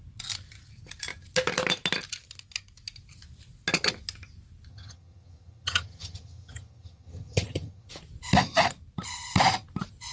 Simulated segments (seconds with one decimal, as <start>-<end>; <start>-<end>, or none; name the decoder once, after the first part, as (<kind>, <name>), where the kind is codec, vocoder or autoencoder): 4.7-7.9 (vocoder, HiFi-GAN)